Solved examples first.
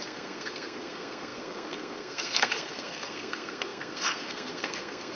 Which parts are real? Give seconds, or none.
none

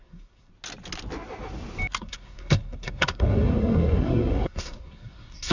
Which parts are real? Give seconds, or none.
0.5-2.0

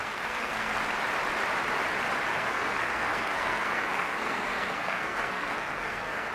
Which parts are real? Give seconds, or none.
0.8-2.3

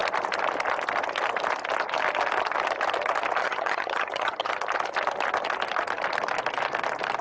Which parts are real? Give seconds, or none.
0.0-3.4; 4.5-7.2

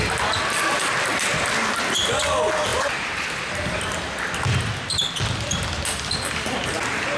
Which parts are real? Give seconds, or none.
0.0-2.7; 3.7-7.2

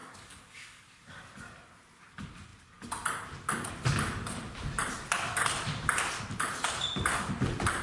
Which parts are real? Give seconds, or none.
1.2-7.8

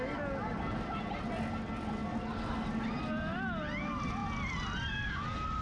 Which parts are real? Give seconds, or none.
0.0-5.6